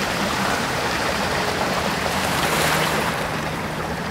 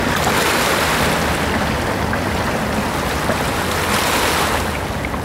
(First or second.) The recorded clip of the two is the second